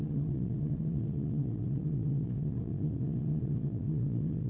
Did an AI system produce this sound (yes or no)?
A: yes